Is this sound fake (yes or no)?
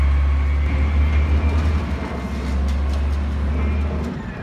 no